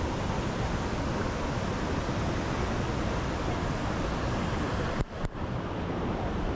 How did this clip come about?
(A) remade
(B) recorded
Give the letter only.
B